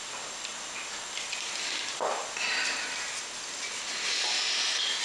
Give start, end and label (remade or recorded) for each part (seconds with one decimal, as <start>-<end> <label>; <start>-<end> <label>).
0.0-0.5 remade; 0.5-3.5 recorded; 3.5-5.0 remade